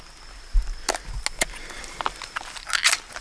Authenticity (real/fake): real